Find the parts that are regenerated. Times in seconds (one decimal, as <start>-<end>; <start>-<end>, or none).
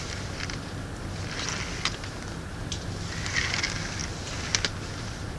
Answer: none